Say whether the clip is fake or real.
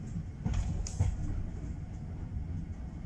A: real